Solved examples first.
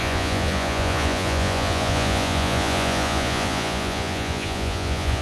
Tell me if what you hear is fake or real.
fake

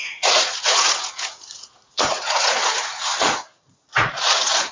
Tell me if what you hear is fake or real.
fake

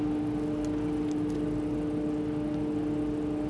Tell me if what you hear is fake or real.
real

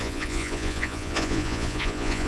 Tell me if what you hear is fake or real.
fake